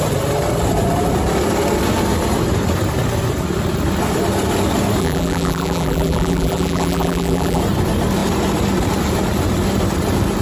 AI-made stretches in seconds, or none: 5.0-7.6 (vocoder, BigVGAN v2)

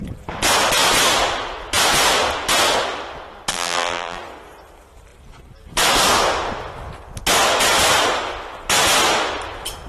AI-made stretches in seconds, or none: 3.5-4.2 (vocoder, BigVGAN v2)

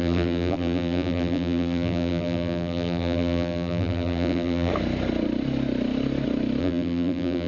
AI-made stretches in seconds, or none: 0.0-4.7 (vocoder, BigVGAN v2); 6.6-7.5

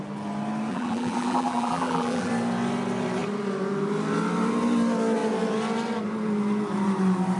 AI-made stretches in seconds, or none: 0.7-2.3 (vocoder, BigVGAN v2)

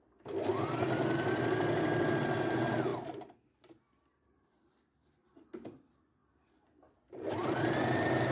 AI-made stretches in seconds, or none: 2.9-5.1 (vocoder, BigVGAN v2); 6.2-7.5

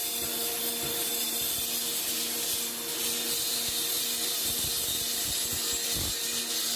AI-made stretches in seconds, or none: 0.0-0.6 (vocoder, BigVGAN v2); 1.1-5.2